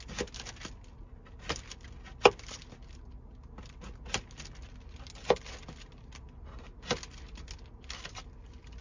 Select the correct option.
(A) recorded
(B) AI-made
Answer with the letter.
A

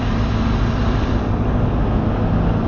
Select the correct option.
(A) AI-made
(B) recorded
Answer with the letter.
B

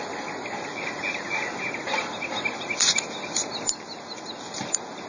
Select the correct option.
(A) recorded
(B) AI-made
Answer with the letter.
A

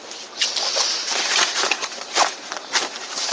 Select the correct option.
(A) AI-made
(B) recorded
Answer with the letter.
A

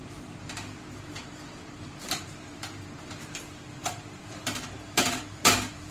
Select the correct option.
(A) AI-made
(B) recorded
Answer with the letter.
A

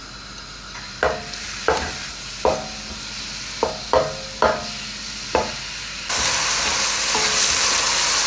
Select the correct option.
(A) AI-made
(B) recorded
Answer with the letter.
B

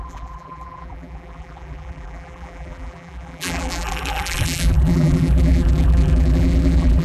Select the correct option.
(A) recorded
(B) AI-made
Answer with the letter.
B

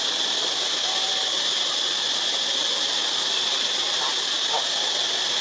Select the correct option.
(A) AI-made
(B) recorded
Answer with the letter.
B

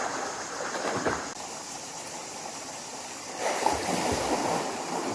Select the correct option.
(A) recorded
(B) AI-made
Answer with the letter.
B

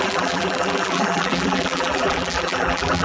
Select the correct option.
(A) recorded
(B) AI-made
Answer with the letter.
B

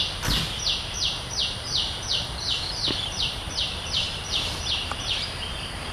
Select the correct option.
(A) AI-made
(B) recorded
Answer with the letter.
A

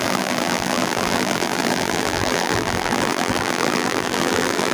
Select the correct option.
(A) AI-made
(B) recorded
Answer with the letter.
A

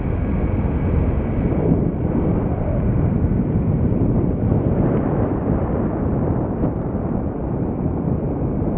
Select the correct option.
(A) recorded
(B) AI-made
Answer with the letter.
B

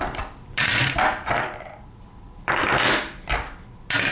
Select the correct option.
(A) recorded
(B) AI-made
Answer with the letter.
B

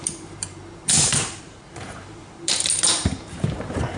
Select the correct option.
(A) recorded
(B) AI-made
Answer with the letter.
B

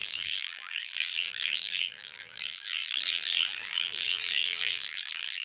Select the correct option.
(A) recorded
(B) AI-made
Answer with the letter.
B